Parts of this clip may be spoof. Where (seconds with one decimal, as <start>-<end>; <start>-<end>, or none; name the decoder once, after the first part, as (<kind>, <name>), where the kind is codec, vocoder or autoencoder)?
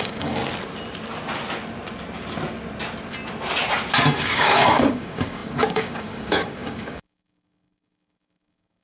0.0-0.4 (codec, DAC); 4.2-8.8